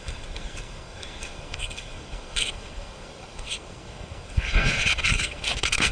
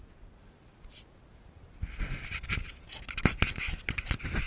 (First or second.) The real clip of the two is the second